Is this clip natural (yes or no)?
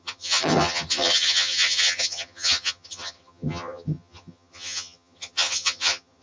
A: no